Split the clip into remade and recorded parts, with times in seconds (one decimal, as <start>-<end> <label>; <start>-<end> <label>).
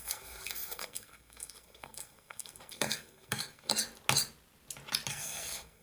0.0-3.7 remade; 3.7-5.1 recorded; 5.1-5.8 remade